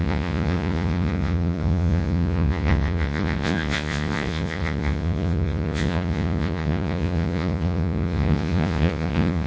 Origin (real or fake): fake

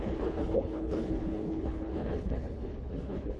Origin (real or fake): fake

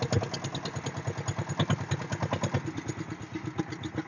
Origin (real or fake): real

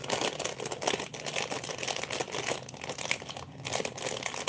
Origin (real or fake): real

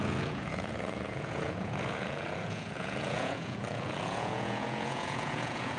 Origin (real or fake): fake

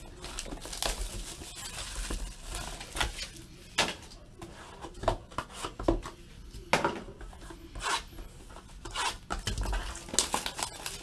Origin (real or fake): real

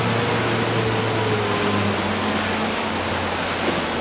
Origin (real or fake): real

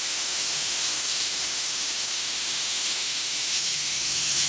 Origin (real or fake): fake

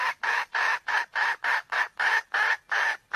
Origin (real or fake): real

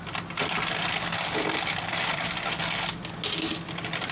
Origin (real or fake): real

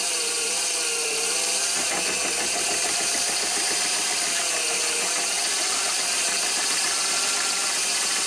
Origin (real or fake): fake